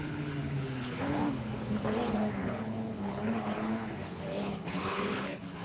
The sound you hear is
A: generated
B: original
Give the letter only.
A